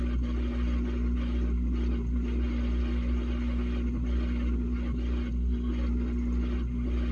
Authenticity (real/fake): real